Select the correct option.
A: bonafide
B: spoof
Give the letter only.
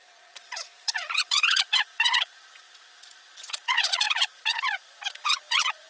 B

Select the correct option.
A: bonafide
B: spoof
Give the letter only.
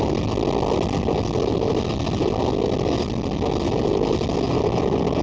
A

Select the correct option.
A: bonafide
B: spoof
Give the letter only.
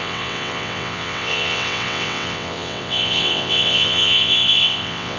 B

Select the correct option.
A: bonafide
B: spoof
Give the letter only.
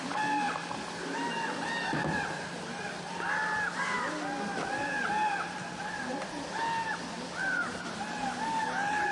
B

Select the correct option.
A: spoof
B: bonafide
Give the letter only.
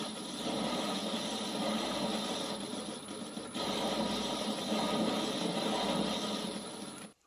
B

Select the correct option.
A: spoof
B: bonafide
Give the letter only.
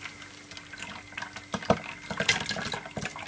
B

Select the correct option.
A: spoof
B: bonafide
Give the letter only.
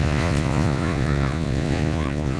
A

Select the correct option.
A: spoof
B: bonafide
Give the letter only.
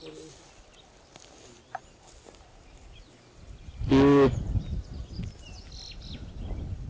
B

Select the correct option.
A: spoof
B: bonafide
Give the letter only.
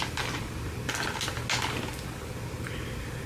B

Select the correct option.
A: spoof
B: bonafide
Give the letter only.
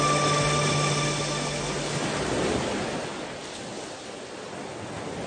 B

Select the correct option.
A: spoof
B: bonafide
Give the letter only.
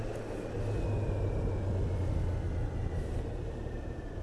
B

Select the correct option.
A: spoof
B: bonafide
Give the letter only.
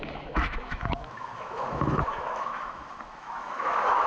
A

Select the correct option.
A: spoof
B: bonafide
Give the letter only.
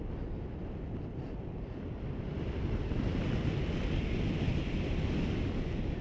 B